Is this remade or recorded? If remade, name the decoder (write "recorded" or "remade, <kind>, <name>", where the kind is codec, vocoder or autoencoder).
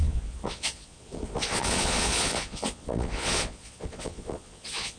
remade, vocoder, Vocos